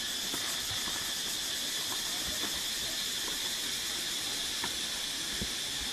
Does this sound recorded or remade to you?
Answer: remade